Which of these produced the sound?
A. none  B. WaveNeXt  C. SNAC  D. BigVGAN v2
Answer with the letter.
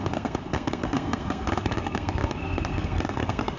C